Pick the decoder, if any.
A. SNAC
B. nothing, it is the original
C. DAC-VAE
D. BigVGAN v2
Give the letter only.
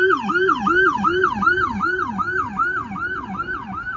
B